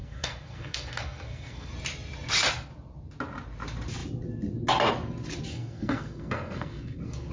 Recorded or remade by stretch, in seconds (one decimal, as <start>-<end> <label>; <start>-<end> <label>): 0.0-1.7 remade; 1.7-5.5 recorded; 5.5-7.3 remade